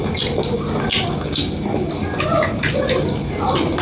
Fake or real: real